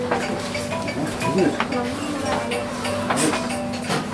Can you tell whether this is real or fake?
real